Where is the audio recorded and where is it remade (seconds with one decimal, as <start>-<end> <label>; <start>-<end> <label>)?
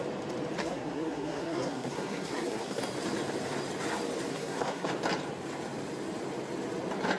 0.0-0.6 recorded; 0.6-2.8 remade; 2.8-4.3 recorded; 4.3-4.9 remade; 4.9-7.2 recorded